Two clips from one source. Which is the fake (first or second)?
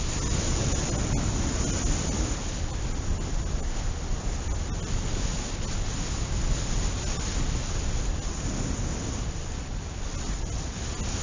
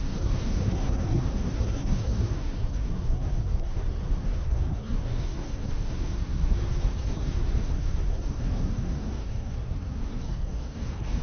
second